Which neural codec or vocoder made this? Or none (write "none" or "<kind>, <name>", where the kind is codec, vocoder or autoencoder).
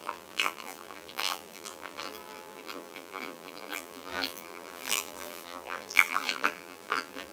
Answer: vocoder, BigVGAN v2